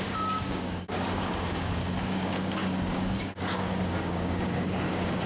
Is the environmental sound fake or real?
fake